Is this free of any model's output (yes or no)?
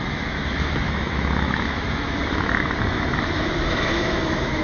no